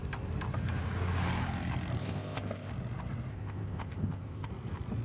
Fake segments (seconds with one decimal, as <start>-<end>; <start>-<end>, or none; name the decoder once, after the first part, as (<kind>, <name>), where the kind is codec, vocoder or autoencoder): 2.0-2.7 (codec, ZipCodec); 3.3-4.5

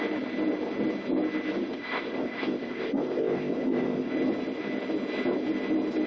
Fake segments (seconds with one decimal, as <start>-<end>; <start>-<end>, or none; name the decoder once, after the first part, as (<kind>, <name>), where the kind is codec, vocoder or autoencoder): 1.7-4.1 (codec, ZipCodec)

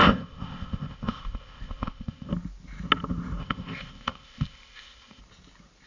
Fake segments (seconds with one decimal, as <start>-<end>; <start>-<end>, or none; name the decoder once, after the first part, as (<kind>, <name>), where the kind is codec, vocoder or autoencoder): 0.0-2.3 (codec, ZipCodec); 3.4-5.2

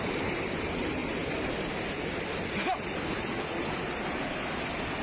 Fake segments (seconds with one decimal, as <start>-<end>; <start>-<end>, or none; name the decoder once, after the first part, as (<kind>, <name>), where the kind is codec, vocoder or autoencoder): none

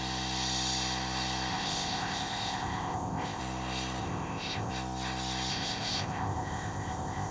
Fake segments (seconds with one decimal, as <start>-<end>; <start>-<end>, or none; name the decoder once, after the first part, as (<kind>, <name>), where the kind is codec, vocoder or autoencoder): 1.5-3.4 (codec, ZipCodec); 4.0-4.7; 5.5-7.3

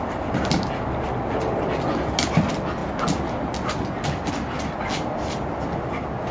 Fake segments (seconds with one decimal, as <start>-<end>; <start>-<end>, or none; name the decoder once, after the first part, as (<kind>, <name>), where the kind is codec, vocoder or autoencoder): none

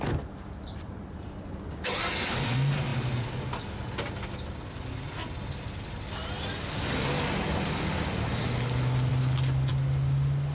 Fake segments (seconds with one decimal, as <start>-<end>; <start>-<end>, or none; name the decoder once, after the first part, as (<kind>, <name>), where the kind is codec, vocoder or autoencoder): none

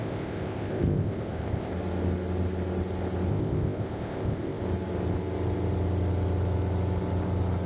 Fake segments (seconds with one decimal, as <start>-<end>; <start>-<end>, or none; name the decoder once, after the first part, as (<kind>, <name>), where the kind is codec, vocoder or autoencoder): 0.0-1.7 (codec, ZipCodec); 3.3-4.6